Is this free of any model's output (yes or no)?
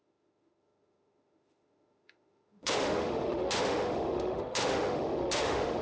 no